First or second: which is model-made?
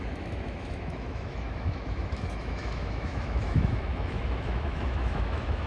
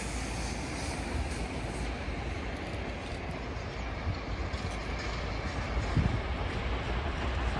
first